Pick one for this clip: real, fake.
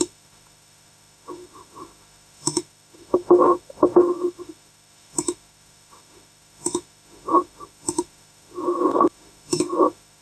fake